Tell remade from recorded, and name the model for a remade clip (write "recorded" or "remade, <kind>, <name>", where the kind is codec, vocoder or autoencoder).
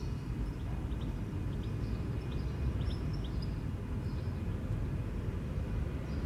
recorded